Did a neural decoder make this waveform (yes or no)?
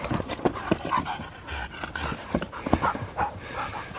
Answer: no